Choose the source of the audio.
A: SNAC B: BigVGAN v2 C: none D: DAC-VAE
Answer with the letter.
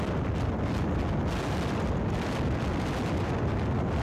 C